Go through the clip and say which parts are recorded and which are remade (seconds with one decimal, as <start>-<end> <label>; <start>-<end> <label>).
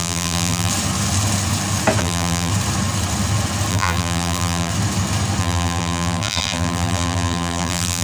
0.0-0.7 remade; 0.7-2.0 recorded; 2.0-2.5 remade; 2.5-3.7 recorded; 3.7-4.7 remade; 4.7-5.4 recorded; 5.4-8.0 remade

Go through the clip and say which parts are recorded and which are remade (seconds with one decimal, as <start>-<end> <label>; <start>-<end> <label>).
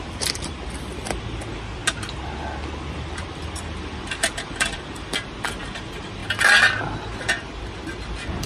0.0-1.8 remade; 1.8-3.0 recorded; 3.0-6.2 remade; 6.2-7.2 recorded; 7.2-8.5 remade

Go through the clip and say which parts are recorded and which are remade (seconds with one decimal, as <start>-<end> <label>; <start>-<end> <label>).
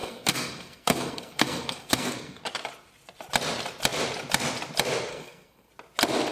0.0-2.4 remade; 2.4-5.1 recorded; 5.1-5.7 remade; 5.7-6.3 recorded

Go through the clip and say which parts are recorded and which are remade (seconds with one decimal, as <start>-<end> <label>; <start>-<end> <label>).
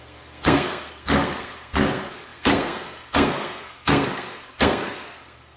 0.0-5.6 remade